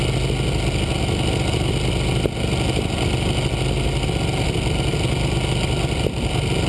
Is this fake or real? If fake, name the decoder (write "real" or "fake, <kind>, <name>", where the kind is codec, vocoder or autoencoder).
real